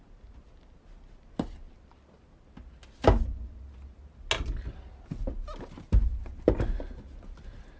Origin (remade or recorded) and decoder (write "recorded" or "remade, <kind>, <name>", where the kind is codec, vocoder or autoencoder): recorded